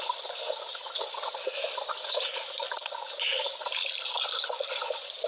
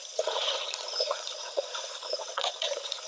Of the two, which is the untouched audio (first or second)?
first